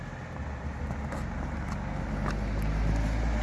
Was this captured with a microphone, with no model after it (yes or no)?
yes